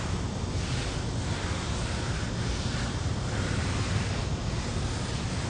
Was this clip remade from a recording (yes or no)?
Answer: no